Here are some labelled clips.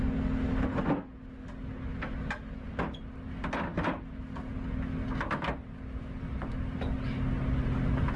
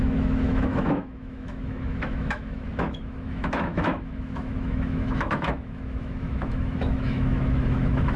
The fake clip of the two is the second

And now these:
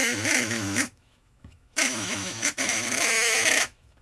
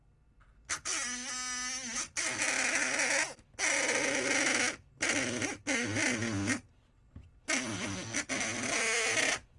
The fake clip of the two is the first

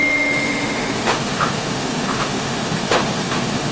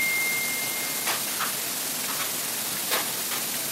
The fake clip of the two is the first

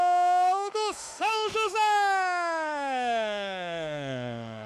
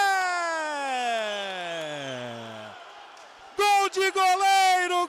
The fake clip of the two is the first